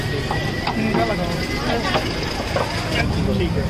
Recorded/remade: recorded